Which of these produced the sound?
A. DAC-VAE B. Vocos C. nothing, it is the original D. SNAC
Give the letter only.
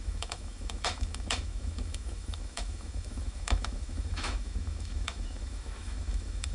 A